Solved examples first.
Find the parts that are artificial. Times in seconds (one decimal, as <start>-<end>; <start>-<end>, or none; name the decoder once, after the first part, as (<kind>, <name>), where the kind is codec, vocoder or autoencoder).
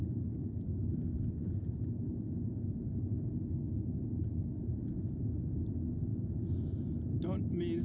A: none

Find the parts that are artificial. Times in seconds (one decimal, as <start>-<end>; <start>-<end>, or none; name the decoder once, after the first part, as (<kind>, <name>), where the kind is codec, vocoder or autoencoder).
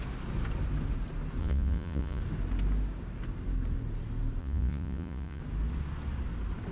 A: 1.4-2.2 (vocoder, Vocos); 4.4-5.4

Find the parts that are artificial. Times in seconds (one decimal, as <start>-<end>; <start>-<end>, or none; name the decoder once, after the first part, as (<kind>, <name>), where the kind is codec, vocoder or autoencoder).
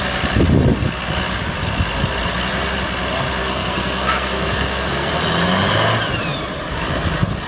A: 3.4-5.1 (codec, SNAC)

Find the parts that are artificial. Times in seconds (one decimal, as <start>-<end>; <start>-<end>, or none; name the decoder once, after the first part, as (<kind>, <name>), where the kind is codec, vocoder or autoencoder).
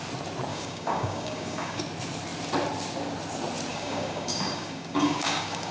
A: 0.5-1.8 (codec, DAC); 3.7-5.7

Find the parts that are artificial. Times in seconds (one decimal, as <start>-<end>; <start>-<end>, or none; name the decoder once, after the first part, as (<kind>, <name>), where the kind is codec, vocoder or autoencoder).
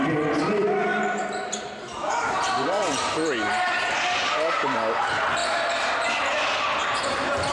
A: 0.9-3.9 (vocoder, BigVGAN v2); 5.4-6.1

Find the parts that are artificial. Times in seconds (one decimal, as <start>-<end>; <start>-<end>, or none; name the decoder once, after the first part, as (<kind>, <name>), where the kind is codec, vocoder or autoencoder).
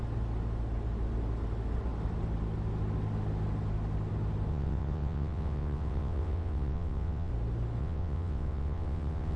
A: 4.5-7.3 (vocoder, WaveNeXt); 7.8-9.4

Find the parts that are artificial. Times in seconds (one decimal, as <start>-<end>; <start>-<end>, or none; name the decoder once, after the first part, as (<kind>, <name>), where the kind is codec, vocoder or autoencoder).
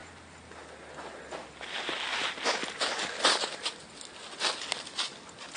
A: none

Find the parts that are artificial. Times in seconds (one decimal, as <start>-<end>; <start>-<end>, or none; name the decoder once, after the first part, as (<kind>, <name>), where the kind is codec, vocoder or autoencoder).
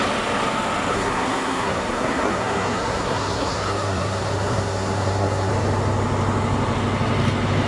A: 0.9-5.5 (codec, SNAC)